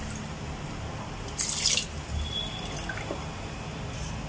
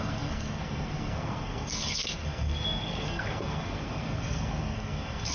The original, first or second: first